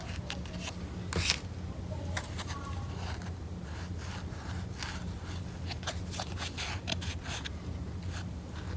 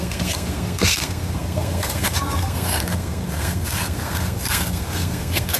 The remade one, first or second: second